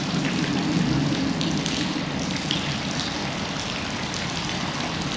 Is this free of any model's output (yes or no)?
yes